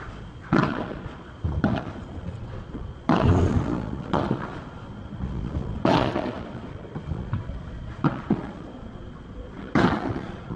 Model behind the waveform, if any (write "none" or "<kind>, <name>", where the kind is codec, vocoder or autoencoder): vocoder, Vocos